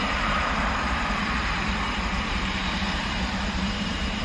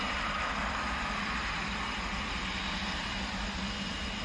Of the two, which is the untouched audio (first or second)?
second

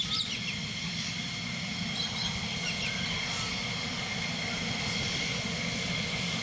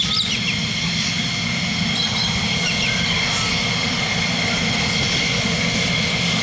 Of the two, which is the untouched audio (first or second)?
second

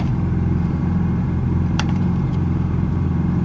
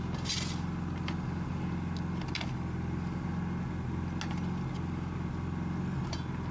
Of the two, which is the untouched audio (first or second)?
second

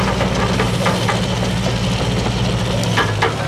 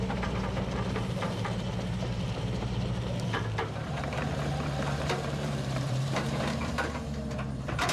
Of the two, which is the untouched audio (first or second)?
first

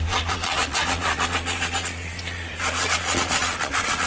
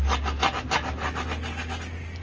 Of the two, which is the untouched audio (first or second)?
second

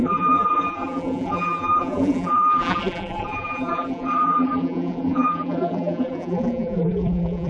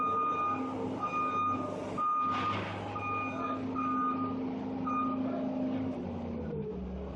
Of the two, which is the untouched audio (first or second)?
second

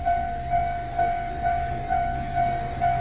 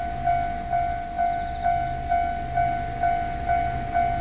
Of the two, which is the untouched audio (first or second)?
second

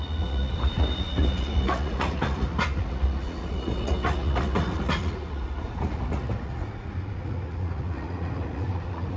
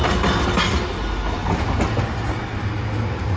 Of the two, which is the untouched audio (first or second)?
second